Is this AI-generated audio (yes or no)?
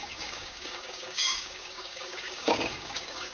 yes